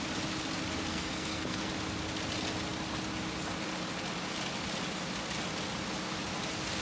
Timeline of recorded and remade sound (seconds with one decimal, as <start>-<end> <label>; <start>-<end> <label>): 0.0-0.9 recorded; 0.9-1.7 remade; 1.7-6.8 recorded